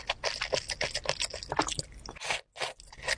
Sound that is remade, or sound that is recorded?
recorded